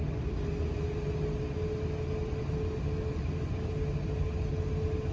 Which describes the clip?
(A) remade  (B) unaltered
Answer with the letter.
B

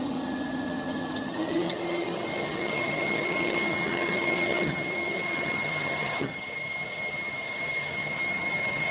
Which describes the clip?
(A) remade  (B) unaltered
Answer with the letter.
A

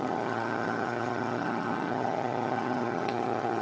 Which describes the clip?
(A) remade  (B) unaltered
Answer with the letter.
A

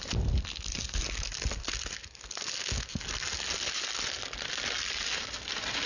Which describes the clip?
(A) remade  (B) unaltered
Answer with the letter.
B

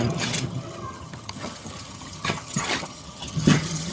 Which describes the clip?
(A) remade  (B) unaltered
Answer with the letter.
A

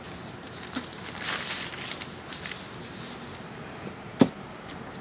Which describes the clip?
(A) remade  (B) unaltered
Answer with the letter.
B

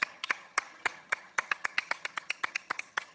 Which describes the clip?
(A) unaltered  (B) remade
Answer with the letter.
B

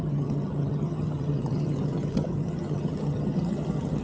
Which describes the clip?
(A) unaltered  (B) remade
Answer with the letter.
B